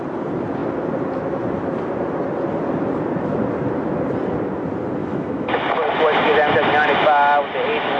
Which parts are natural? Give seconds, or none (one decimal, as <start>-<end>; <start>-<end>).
0.0-5.0; 5.5-8.0